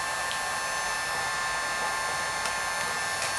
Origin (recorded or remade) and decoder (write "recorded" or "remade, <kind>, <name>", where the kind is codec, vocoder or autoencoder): recorded